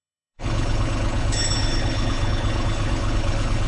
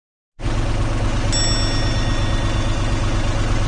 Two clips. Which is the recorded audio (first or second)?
second